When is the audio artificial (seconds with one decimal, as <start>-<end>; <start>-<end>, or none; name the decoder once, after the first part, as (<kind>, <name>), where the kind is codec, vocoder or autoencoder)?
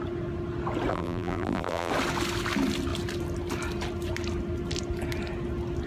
0.9-1.9 (vocoder, BigVGAN v2)